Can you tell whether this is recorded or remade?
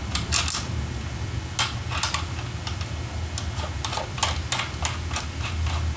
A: recorded